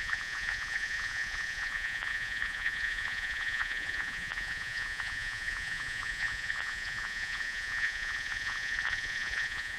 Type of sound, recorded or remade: remade